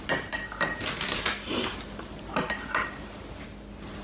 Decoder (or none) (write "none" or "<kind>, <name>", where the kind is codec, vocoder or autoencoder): none